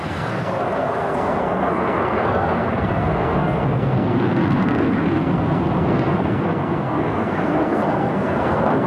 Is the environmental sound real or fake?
fake